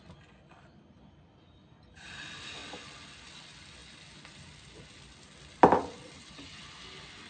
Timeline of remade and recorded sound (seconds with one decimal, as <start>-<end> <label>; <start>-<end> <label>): 0.0-7.3 recorded